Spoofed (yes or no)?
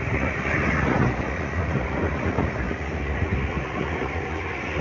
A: yes